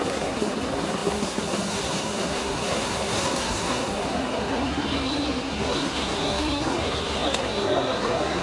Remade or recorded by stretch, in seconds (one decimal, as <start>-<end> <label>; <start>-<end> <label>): 0.0-8.4 remade